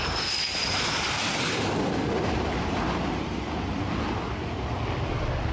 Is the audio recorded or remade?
recorded